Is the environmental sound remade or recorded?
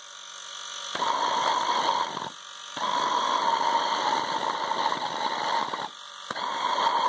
recorded